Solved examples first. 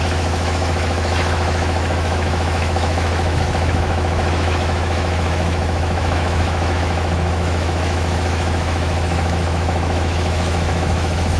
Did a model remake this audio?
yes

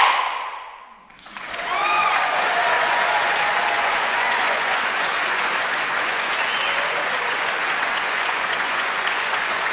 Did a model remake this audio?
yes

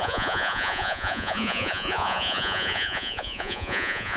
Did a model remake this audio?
yes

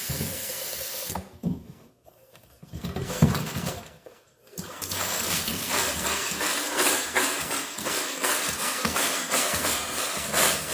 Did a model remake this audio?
yes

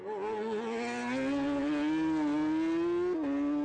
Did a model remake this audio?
no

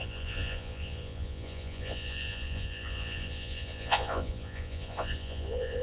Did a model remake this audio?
yes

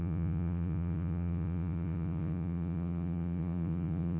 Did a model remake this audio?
yes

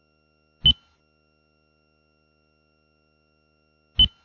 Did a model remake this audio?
no